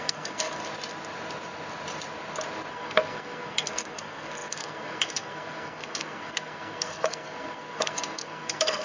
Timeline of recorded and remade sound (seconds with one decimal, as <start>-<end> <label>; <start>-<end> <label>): 0.0-0.6 remade; 0.6-2.7 recorded; 2.7-8.8 remade